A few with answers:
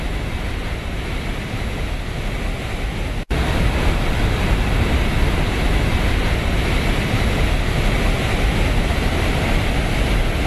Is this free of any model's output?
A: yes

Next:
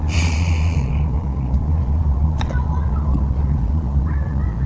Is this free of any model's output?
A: no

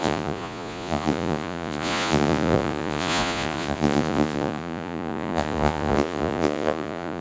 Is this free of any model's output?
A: no